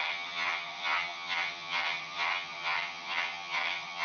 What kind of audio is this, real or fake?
fake